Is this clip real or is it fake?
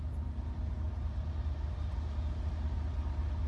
real